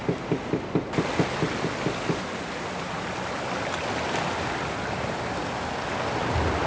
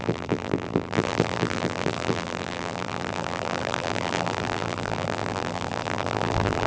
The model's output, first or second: second